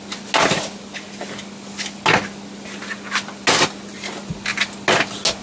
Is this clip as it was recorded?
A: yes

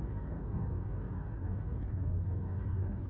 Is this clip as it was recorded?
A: no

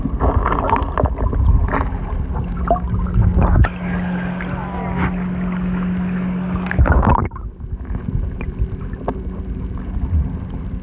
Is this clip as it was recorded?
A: yes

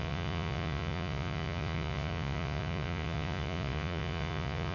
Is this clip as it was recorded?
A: no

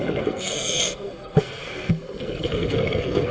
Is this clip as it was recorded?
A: no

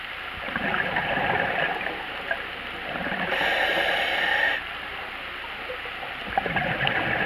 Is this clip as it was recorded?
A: yes